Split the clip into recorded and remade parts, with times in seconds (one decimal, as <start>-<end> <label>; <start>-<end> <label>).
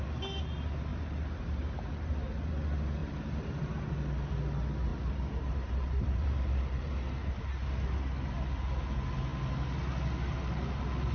0.0-0.9 recorded; 0.9-2.5 remade; 2.5-3.0 recorded; 3.0-3.9 remade; 3.9-4.9 recorded; 4.9-6.9 remade; 6.9-11.1 recorded